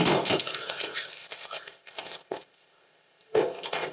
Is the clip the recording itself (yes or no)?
no